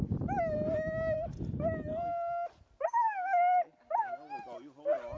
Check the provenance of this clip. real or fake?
real